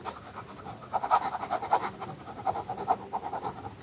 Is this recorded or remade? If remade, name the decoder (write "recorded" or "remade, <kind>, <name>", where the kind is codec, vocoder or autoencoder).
recorded